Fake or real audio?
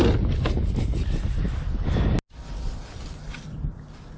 real